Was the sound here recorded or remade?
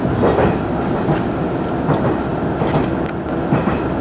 recorded